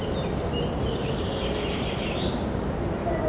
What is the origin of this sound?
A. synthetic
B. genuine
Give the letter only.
B